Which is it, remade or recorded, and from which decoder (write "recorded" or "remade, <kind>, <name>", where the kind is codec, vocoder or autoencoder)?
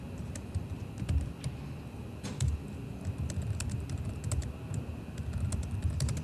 recorded